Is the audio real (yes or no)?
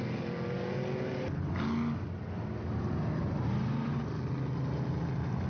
yes